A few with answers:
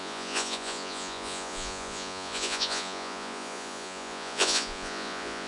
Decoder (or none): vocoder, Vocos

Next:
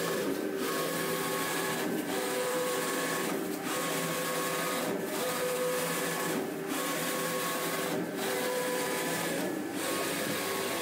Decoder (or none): none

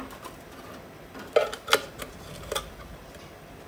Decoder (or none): none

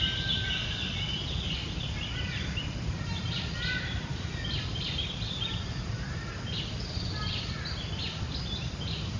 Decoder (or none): none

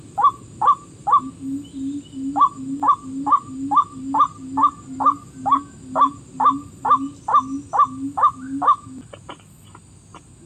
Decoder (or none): none